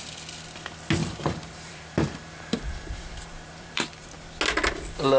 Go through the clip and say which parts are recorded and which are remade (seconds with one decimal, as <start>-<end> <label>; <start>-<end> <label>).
0.0-1.0 recorded; 1.0-4.0 remade; 4.0-5.2 recorded